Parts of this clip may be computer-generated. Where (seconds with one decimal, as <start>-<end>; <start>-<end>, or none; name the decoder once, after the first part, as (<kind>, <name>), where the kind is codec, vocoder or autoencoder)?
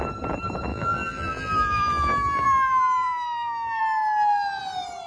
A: 0.7-3.8 (vocoder, BigVGAN v2)